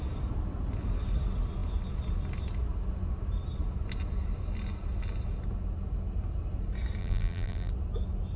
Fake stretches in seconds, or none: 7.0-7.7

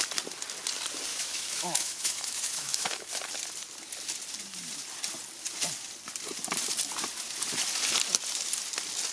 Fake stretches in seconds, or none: 1.1-3.1